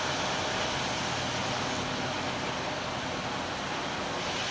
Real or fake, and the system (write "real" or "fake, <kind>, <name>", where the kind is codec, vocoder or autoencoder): real